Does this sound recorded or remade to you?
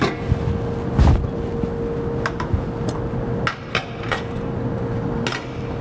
recorded